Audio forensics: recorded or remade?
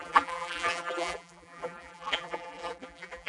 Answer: remade